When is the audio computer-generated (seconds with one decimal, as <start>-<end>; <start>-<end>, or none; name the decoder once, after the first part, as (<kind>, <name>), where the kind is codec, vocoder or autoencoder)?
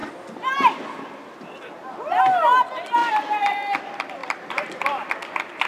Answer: 3.0-3.8 (vocoder, BigVGAN v2); 4.2-5.1